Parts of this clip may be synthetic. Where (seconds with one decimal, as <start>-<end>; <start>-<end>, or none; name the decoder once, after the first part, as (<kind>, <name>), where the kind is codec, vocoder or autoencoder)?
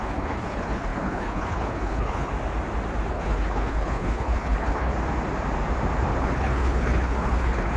0.0-2.3 (codec, HILCodec); 3.1-4.9; 6.2-7.8